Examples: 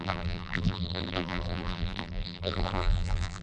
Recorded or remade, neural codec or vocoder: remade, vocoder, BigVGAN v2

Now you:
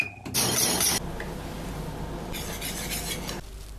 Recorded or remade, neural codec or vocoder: recorded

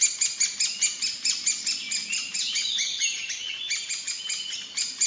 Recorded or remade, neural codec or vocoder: recorded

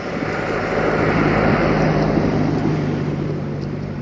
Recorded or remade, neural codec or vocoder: remade, vocoder, BigVGAN v2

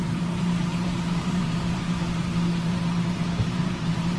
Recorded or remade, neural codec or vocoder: remade, vocoder, BigVGAN v2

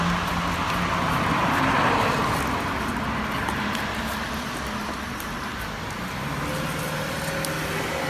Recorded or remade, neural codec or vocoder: recorded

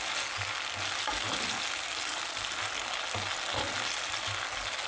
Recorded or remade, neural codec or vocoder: recorded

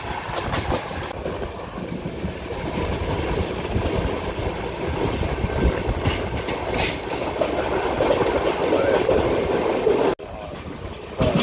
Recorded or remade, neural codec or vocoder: recorded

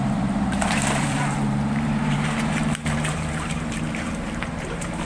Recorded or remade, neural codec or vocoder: remade, vocoder, BigVGAN v2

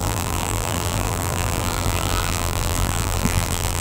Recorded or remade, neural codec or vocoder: remade, vocoder, BigVGAN v2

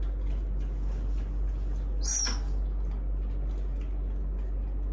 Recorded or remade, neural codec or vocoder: recorded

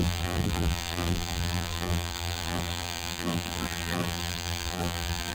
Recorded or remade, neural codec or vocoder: remade, vocoder, BigVGAN v2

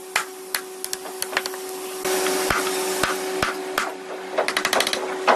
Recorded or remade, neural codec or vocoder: recorded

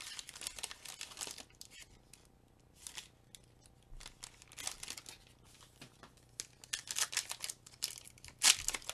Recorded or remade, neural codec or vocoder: recorded